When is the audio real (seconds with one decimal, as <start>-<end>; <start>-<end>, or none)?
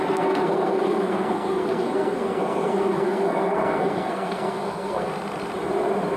5.1-6.2